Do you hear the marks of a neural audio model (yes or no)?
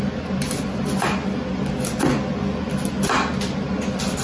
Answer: no